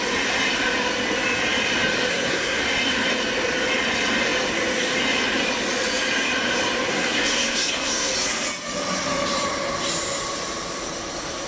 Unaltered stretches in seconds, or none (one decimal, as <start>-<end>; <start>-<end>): 0.0-2.1; 2.6-6.9; 8.1-11.5